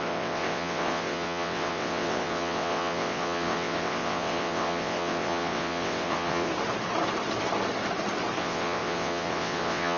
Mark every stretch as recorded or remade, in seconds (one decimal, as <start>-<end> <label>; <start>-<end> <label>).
0.0-6.5 remade; 6.5-8.4 recorded; 8.4-10.0 remade